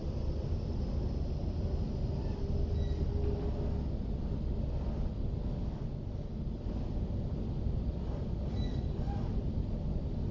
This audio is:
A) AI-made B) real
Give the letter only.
B